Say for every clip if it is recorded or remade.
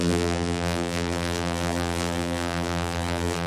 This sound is remade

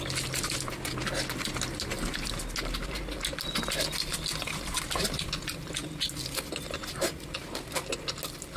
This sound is recorded